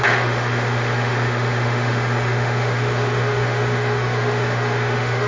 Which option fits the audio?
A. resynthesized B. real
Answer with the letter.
A